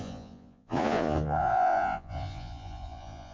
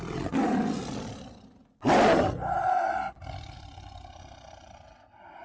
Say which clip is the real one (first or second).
second